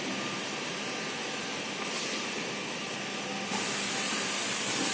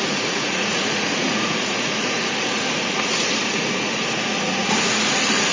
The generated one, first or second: second